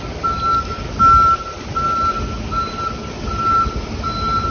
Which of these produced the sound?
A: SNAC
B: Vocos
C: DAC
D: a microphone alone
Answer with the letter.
D